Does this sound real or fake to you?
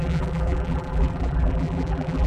fake